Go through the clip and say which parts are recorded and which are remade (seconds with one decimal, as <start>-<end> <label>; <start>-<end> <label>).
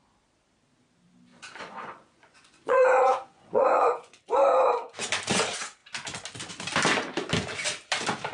0.0-1.3 recorded; 1.3-4.2 remade; 4.2-8.3 recorded